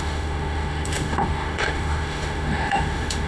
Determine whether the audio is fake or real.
fake